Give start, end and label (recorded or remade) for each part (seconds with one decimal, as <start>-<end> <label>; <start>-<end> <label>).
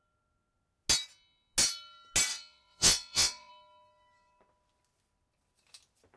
0.0-2.3 recorded; 2.3-3.5 remade; 3.5-6.2 recorded